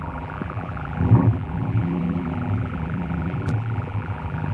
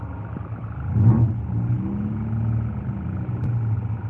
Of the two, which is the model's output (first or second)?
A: first